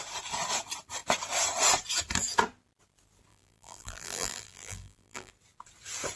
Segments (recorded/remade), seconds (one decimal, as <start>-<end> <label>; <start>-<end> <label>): 0.0-3.3 recorded; 3.3-5.3 remade; 5.3-6.2 recorded